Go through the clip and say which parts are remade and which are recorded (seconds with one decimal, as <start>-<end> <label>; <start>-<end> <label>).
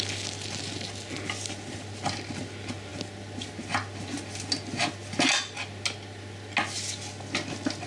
0.0-7.9 recorded